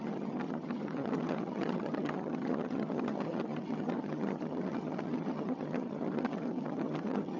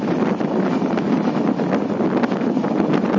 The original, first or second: second